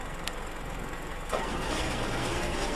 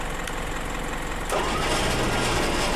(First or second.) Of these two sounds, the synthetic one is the first